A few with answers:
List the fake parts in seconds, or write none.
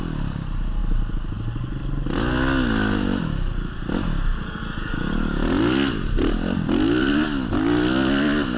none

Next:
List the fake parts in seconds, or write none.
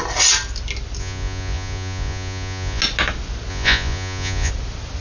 1.0-2.8 (vocoder, Vocos); 3.5-4.5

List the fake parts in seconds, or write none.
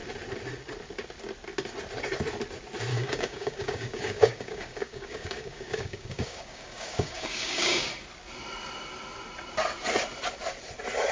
2.9-7.9 (codec, DAC)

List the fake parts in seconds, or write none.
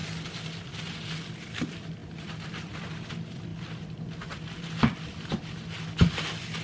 0.0-1.6 (vocoder, BigVGAN v2); 2.0-3.1; 3.5-5.9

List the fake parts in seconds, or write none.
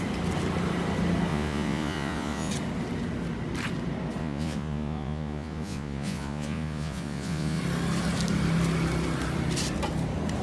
1.3-2.5 (vocoder, Vocos); 4.2-7.6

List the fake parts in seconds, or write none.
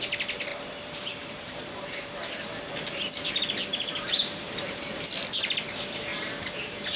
0.5-2.5 (vocoder, BigVGAN v2); 3.7-5.0; 6.1-7.0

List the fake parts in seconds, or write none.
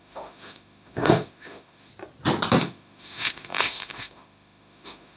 0.0-1.9 (autoencoder, DAC-VAE); 2.6-5.2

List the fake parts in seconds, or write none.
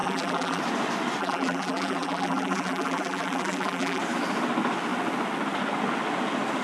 0.0-0.6 (vocoder, BigVGAN v2); 1.2-4.0